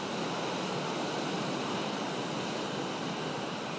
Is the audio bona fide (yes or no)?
yes